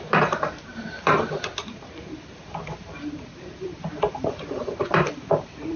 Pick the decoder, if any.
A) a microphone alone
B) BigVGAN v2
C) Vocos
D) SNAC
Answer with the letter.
B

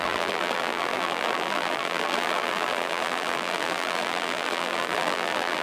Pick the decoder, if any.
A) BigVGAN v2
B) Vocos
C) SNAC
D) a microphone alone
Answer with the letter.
A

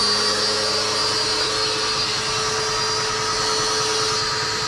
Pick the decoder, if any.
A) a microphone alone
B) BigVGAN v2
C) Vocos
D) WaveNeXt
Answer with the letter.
A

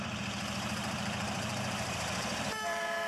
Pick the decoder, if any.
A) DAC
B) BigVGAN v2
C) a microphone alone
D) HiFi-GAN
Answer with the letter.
B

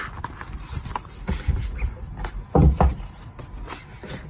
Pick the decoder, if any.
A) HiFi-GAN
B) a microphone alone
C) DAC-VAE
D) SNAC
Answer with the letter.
B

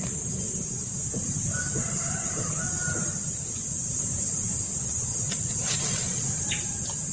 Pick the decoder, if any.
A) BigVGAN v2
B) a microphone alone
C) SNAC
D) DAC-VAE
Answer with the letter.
A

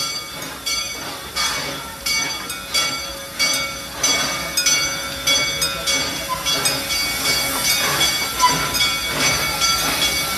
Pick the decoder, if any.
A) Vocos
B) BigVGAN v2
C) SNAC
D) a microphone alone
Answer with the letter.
D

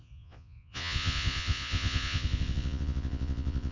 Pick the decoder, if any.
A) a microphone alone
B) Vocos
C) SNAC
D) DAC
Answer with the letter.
B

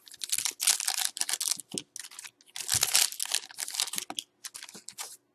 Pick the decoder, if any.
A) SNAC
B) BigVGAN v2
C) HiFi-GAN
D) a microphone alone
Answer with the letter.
D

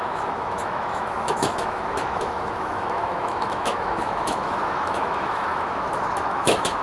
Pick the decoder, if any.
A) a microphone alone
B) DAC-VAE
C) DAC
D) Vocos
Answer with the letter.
B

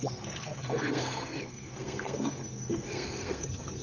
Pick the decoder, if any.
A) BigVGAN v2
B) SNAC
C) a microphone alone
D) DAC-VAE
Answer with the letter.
B